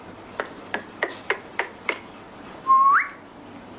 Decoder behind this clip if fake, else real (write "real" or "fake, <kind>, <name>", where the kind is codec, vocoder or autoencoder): real